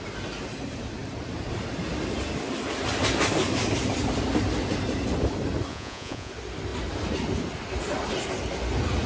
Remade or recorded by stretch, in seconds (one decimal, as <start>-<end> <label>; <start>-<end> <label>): 0.0-5.7 recorded; 5.7-6.3 remade; 6.3-9.1 recorded